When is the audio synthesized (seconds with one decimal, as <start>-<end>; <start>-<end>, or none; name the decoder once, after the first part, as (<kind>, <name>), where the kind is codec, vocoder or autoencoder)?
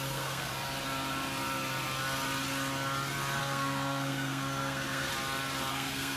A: 0.0-0.5 (codec, SNAC); 3.4-5.1; 5.7-6.2